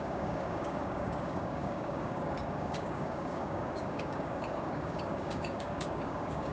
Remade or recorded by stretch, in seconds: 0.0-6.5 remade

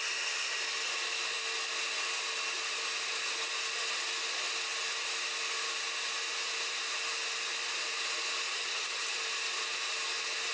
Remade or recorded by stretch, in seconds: 0.0-8.5 recorded; 8.5-9.1 remade; 9.1-10.5 recorded

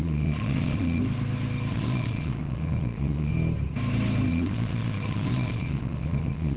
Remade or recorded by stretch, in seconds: 0.0-1.0 remade; 1.0-1.7 recorded; 1.7-3.3 remade; 3.3-4.3 recorded; 4.3-6.6 remade

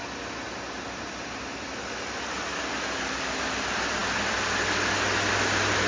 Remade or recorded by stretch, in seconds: 0.0-5.9 recorded

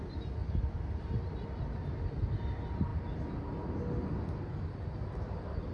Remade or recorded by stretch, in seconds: 0.0-5.7 recorded